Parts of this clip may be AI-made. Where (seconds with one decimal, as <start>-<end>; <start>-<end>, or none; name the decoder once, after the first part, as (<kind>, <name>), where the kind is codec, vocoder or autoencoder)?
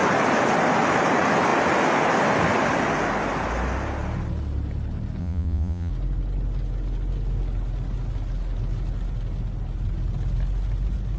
5.2-5.9 (vocoder, Vocos)